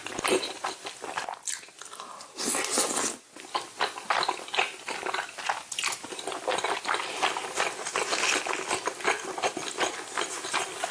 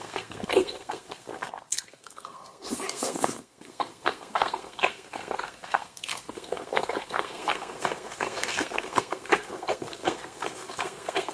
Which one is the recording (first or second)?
first